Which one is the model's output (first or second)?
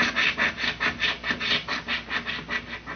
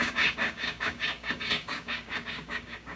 second